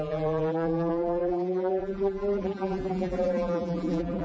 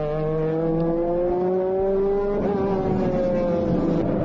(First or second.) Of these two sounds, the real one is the second